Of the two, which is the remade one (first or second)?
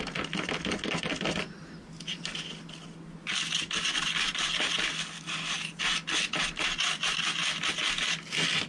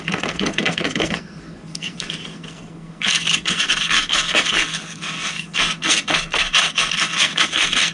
second